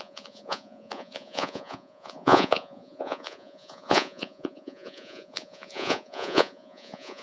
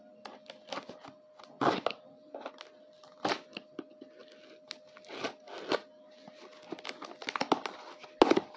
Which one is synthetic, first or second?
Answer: first